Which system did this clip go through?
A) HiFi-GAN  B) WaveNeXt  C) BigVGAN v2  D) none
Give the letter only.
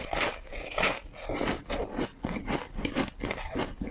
D